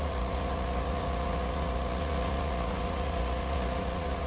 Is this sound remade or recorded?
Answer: remade